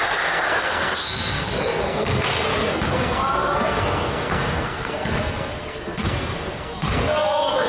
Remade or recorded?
remade